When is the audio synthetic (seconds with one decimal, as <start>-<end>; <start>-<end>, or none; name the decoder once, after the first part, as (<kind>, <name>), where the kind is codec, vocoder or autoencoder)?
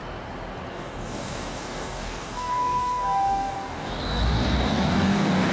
0.7-5.5 (codec, DAC)